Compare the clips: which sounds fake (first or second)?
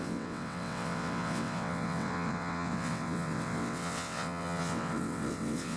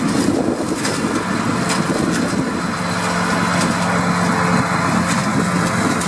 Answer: first